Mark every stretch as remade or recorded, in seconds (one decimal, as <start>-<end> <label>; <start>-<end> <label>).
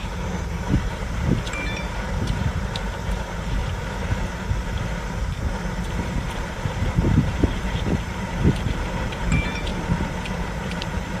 0.0-3.6 remade; 3.6-5.7 recorded; 5.7-9.7 remade; 9.7-10.3 recorded; 10.3-11.2 remade